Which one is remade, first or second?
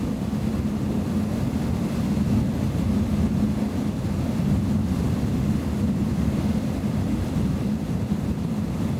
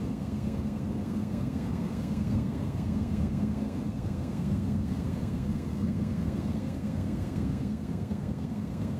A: second